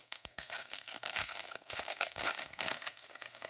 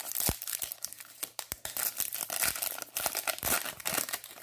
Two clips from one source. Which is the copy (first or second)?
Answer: first